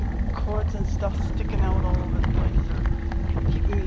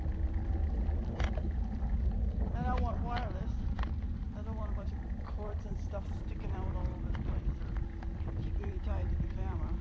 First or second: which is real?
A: first